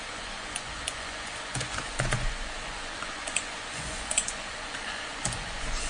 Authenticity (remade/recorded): remade